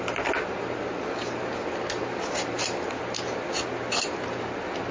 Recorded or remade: recorded